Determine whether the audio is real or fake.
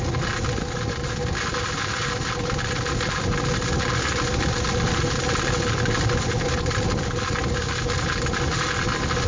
real